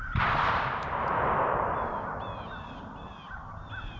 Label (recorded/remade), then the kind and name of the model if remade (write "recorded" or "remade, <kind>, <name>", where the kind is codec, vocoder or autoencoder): recorded